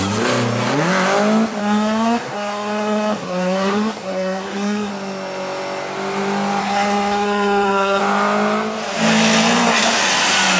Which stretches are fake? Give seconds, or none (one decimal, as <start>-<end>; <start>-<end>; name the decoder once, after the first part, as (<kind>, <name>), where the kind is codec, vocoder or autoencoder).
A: 1.6-4.9 (codec, SNAC); 6.6-8.0